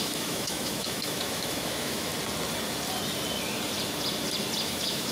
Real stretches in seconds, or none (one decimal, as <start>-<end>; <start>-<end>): 2.1-4.6